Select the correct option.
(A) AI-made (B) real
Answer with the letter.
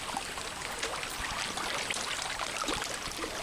B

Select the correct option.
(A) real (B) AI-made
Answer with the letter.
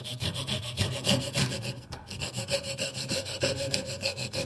B